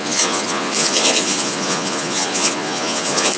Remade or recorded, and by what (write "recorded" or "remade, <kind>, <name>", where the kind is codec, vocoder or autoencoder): remade, vocoder, Vocos